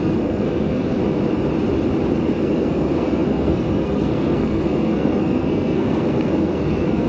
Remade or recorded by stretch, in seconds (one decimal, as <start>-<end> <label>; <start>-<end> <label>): 0.0-1.0 remade; 1.0-2.1 recorded; 2.1-7.1 remade